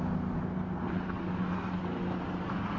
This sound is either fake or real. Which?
real